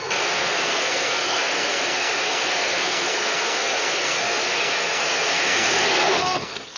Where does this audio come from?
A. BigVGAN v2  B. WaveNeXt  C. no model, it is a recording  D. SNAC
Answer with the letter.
D